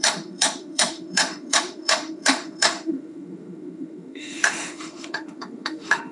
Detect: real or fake fake